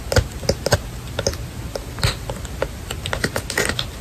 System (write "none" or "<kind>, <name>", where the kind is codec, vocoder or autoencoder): none